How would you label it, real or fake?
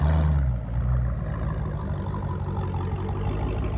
real